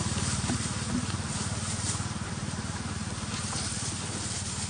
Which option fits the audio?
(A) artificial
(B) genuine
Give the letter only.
B